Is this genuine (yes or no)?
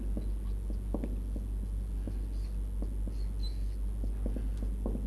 yes